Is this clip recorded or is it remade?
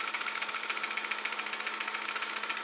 recorded